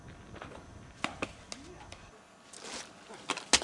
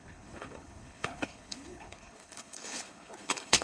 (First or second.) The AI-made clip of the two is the second